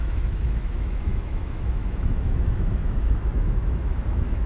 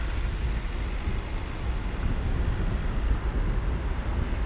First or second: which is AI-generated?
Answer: first